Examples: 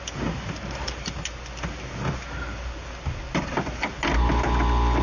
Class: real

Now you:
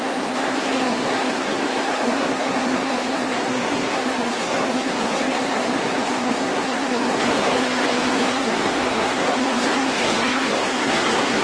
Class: fake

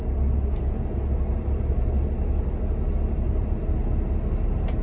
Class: real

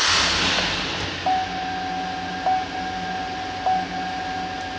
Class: real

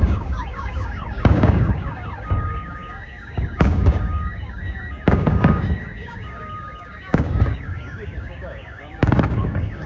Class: fake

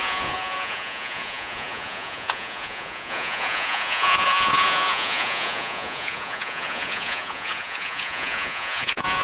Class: fake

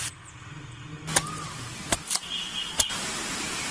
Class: real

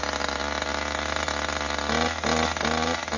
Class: real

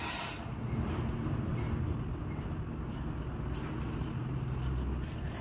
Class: real